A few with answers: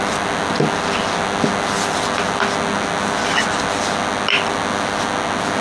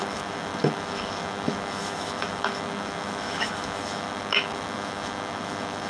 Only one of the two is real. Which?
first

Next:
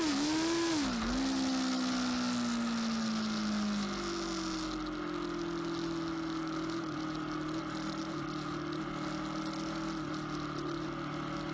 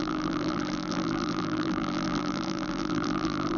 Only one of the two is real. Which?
first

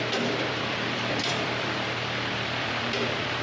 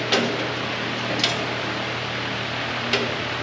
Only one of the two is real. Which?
second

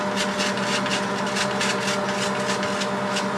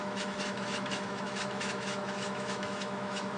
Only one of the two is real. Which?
first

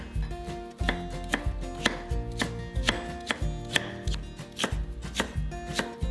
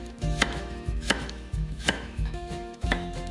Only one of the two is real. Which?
first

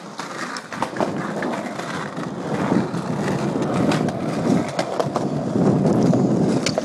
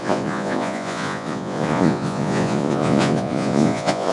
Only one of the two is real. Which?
first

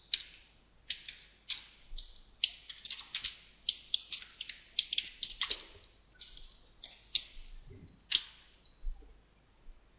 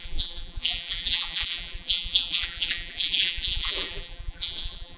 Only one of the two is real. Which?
first